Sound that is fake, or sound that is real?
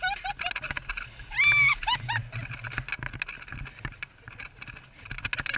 real